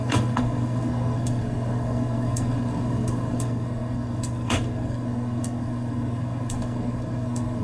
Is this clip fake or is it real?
fake